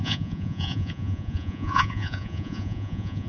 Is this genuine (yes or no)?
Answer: no